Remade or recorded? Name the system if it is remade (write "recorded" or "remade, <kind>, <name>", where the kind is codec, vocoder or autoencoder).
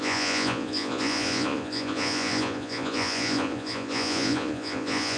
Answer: remade, vocoder, Vocos